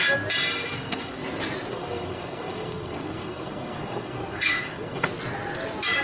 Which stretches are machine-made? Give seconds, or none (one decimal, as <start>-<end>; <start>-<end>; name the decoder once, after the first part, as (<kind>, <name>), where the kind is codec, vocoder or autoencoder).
0.6-1.2 (codec, SNAC); 1.7-5.1